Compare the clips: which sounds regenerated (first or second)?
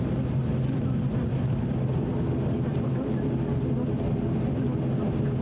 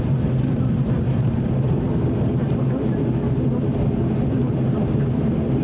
second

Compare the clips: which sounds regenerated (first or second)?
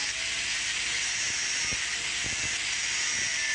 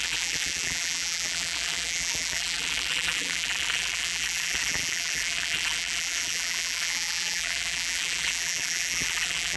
second